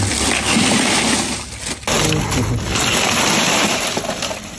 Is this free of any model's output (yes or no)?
yes